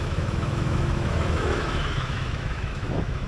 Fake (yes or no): yes